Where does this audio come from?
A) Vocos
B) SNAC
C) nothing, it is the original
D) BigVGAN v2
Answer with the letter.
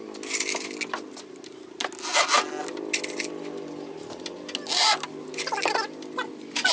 C